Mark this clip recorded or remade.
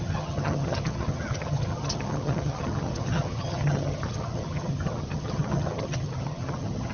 remade